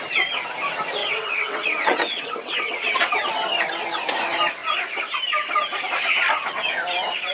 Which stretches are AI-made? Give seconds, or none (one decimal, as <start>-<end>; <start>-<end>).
1.0-3.3